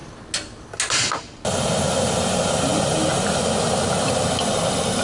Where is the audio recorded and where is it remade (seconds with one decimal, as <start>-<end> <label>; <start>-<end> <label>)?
0.0-5.0 recorded